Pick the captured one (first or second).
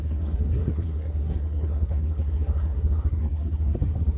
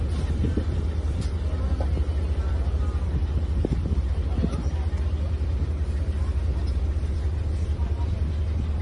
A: second